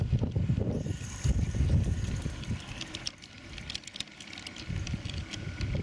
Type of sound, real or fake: real